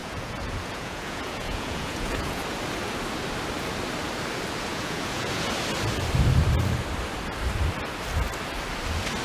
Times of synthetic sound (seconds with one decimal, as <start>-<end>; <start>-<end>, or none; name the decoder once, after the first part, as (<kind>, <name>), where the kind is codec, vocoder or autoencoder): 0.0-2.4 (vocoder, Vocos); 4.7-5.5